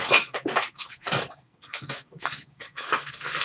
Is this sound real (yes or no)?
no